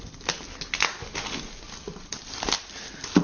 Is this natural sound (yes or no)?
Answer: yes